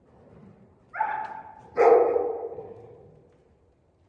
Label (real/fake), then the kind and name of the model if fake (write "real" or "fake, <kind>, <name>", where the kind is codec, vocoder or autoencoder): real